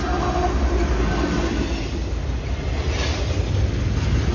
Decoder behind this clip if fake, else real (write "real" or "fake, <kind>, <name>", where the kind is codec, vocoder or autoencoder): real